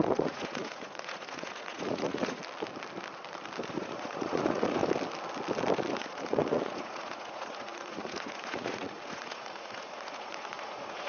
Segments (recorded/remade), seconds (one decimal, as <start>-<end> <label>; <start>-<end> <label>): 0.0-2.4 remade; 2.4-3.7 recorded; 3.7-4.8 remade; 4.8-5.9 recorded; 5.9-11.1 remade